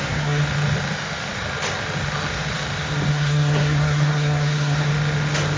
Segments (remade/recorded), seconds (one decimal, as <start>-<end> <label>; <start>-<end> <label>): 0.0-0.4 remade; 0.4-3.1 recorded; 3.1-4.9 remade; 4.9-5.6 recorded